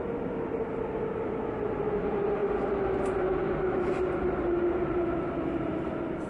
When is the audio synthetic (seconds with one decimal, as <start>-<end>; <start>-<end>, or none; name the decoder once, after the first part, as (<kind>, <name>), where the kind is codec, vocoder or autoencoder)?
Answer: none